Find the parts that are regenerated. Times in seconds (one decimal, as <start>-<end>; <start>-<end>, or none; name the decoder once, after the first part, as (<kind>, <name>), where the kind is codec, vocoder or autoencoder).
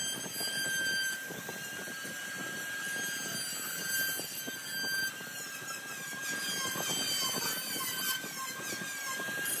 none